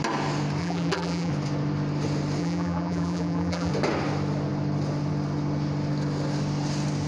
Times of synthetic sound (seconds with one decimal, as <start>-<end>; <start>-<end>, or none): 0.6-1.3; 2.4-3.7